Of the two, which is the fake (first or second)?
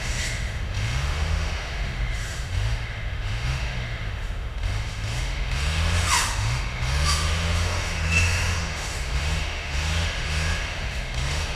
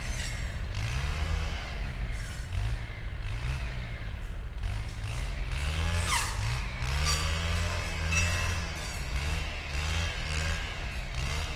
first